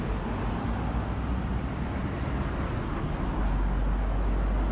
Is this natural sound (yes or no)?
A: yes